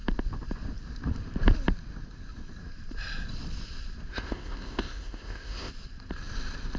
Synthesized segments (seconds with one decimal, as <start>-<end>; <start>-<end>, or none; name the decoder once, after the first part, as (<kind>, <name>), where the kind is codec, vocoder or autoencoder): 4.1-5.7 (codec, ZipCodec)